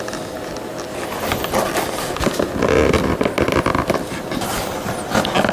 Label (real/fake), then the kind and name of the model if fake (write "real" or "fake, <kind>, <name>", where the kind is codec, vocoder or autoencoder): real